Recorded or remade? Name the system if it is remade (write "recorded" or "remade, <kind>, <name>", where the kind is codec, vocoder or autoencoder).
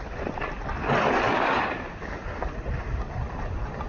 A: recorded